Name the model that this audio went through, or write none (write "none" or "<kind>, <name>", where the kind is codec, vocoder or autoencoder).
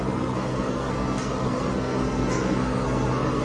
codec, SNAC